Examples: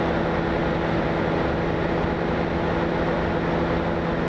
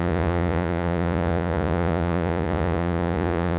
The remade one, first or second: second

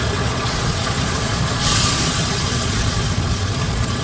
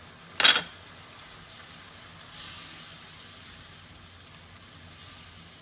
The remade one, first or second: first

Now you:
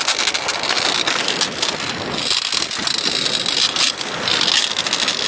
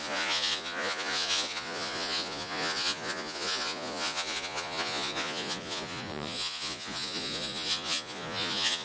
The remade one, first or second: second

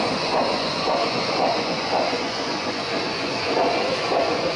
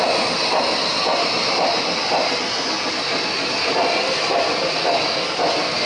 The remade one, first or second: first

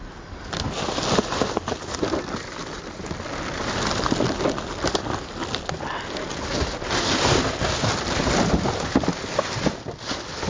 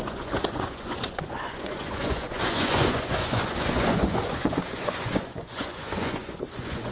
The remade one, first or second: second